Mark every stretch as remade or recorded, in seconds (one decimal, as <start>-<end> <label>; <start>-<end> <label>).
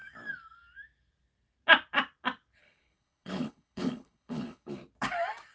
0.0-2.6 recorded; 2.6-4.8 remade; 4.8-5.5 recorded